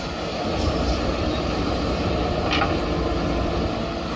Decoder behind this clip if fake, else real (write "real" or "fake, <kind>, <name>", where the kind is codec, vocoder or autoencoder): real